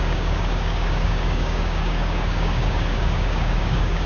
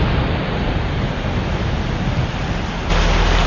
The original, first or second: second